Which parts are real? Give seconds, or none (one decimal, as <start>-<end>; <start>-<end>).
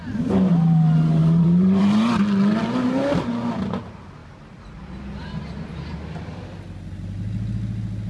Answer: 0.0-1.2; 1.9-4.2; 5.9-8.1